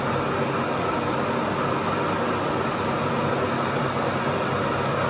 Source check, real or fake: real